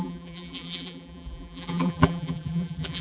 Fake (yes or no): yes